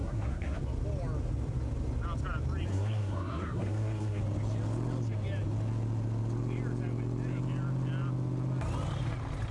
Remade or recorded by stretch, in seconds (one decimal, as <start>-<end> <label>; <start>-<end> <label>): 0.0-0.6 remade; 0.6-2.7 recorded; 2.7-4.2 remade; 4.2-9.5 recorded